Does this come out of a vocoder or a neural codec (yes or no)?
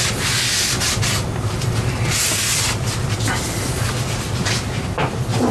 no